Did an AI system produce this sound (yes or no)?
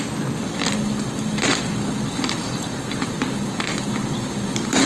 yes